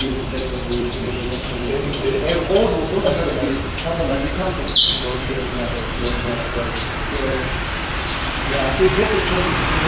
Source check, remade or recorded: remade